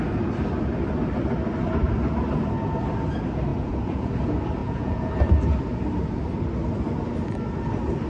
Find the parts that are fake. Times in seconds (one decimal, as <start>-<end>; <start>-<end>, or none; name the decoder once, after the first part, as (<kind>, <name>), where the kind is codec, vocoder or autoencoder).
3.5-4.1 (vocoder, Vocos); 4.6-5.1